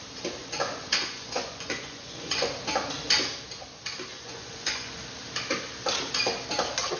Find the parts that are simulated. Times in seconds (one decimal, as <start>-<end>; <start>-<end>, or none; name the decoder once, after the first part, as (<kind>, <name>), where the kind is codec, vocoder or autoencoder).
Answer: 0.4-2.5 (vocoder, Vocos); 4.1-5.0